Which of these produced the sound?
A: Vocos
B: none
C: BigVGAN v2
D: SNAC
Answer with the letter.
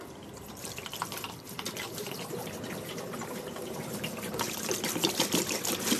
C